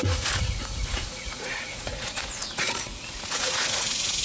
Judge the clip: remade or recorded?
remade